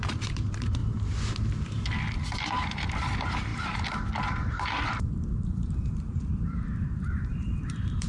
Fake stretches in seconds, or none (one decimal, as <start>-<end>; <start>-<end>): 0.0-0.8; 2.5-8.1